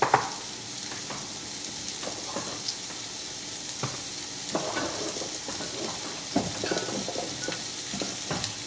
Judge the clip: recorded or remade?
recorded